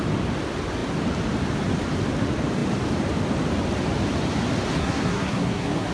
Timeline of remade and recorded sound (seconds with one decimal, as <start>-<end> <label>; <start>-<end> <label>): 0.0-4.8 recorded; 4.8-5.9 remade